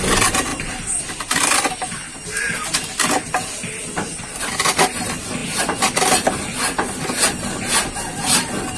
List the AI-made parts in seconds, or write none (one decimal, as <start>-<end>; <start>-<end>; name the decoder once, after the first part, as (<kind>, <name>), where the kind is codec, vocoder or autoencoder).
0.5-1.0 (vocoder, BigVGAN v2); 5.4-6.3